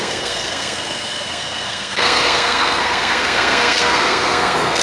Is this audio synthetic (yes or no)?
yes